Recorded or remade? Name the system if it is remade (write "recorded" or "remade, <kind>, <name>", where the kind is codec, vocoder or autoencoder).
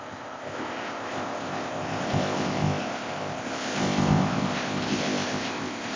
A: remade, codec, ZipCodec